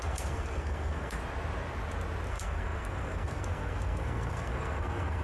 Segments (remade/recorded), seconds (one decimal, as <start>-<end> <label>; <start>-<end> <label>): 0.0-1.2 remade; 1.2-2.3 recorded; 2.3-5.2 remade